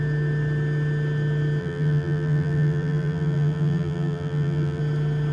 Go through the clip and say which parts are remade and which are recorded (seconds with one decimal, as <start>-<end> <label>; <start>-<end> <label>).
0.0-1.6 recorded; 1.6-4.8 remade; 4.8-5.3 recorded